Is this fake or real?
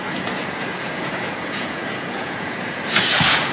fake